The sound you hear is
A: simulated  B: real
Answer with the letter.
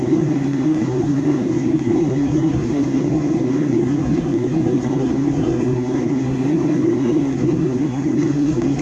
A